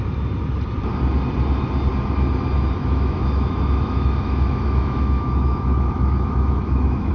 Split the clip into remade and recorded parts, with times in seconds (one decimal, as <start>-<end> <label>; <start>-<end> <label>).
0.0-2.8 recorded; 2.8-7.1 remade

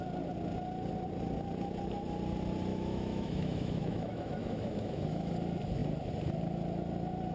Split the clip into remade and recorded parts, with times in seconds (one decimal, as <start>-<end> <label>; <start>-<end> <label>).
0.0-2.7 recorded; 2.7-5.3 remade; 5.3-7.3 recorded

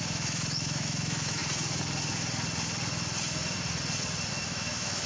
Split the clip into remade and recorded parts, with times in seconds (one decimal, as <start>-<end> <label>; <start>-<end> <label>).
0.0-1.4 remade; 1.4-4.3 recorded; 4.3-5.1 remade

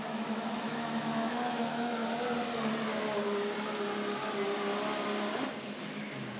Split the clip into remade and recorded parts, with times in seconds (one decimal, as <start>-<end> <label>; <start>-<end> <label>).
0.0-2.0 remade; 2.0-5.8 recorded; 5.8-6.4 remade

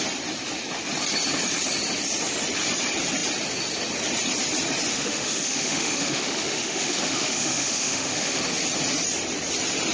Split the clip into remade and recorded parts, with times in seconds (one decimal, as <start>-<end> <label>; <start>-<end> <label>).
0.0-4.9 recorded; 4.9-8.4 remade; 8.4-9.9 recorded

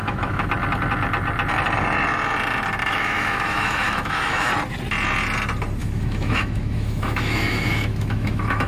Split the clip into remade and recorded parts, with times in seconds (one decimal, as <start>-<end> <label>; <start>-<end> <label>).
0.0-0.5 remade; 0.5-2.8 recorded; 2.8-4.5 remade; 4.5-5.8 recorded; 5.8-8.7 remade